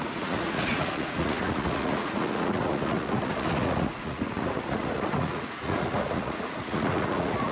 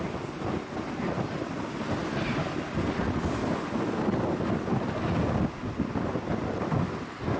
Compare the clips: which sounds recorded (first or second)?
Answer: second